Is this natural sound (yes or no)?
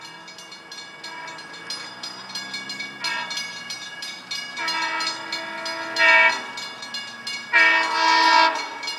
yes